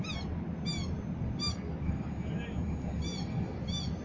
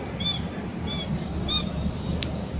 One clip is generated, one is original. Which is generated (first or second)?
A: second